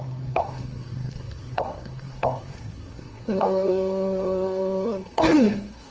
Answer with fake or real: fake